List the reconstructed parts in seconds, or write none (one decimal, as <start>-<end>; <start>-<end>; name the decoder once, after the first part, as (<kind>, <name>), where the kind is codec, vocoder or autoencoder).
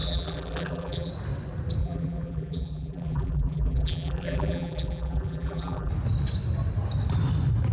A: 0.0-1.1 (vocoder, BigVGAN v2); 1.8-5.9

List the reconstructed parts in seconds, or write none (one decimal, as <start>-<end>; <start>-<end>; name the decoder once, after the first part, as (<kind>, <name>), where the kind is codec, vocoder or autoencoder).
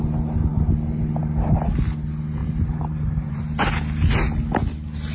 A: 2.4-3.4 (vocoder, BigVGAN v2)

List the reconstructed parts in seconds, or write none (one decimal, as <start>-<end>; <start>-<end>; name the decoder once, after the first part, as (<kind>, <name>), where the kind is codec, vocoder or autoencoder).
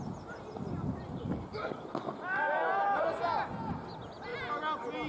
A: none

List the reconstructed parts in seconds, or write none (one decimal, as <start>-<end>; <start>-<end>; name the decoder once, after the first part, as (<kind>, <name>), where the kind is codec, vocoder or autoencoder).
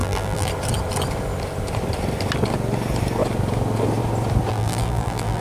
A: 0.0-0.5 (vocoder, BigVGAN v2); 4.5-5.4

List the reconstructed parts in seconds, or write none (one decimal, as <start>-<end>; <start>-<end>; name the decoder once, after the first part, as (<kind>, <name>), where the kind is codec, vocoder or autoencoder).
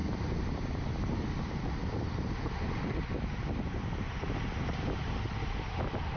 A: 0.0-6.2 (vocoder, BigVGAN v2)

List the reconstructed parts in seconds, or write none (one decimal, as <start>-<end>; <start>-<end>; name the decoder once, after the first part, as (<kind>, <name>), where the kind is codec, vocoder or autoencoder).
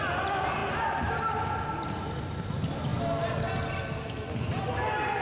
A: none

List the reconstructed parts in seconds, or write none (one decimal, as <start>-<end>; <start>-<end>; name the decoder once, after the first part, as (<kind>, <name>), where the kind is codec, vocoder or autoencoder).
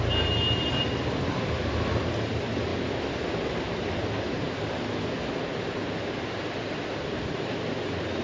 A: none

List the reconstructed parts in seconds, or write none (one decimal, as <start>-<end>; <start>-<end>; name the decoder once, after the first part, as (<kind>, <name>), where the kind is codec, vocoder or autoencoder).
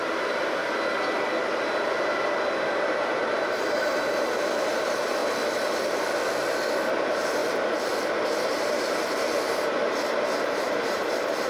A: 0.0-0.6 (vocoder, BigVGAN v2); 2.9-5.2; 7.0-7.4; 8.5-11.5